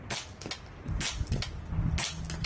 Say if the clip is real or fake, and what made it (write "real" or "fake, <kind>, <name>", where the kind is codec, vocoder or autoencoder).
real